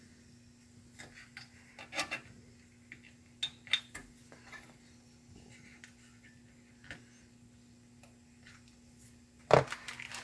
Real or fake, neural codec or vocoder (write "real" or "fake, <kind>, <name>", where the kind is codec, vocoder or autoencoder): real